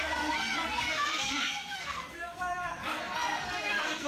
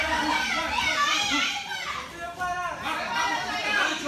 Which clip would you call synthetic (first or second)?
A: first